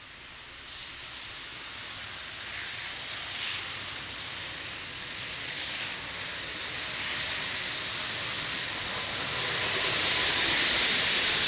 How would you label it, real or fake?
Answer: real